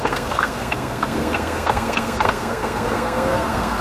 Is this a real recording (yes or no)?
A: no